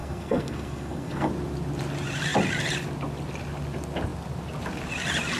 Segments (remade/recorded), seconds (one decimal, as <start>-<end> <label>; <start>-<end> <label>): 0.0-1.3 remade; 1.3-5.4 recorded